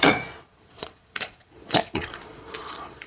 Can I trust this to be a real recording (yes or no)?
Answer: no